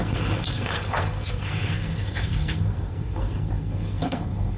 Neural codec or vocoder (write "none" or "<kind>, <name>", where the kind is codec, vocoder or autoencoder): codec, SNAC